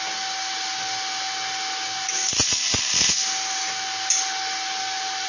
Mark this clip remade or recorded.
recorded